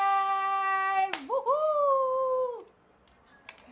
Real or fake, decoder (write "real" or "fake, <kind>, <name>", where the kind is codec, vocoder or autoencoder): real